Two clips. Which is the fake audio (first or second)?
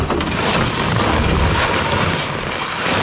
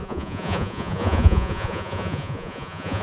second